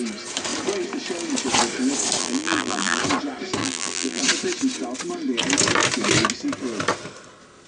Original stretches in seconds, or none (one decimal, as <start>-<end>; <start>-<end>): 0.0-2.2; 3.0-3.6; 4.2-7.7